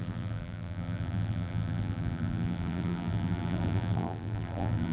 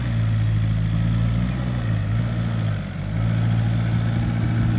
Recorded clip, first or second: second